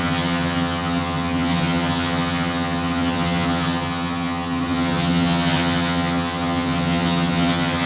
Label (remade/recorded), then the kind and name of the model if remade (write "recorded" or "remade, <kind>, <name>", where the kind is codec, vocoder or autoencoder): remade, vocoder, HiFi-GAN